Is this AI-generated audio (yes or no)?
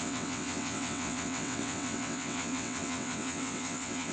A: yes